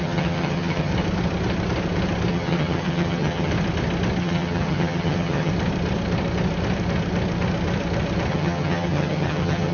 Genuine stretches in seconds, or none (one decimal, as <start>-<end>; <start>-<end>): 0.9-2.3; 3.5-4.2; 5.5-8.3